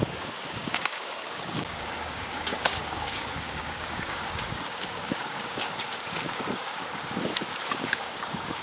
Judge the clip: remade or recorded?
remade